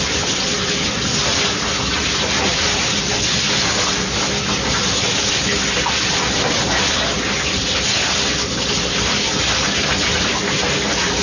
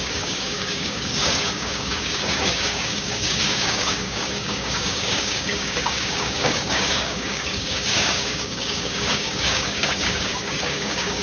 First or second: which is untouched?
first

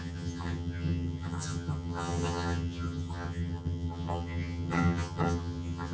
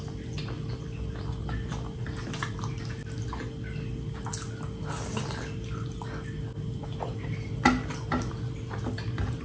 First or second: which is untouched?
second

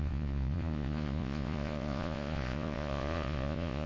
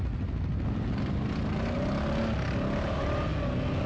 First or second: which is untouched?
second